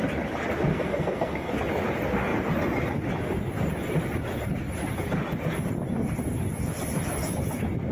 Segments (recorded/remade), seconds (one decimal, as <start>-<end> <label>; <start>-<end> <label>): 0.0-0.7 recorded; 0.7-1.5 remade; 1.5-7.9 recorded